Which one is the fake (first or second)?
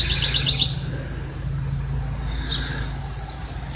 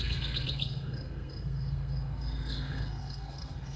second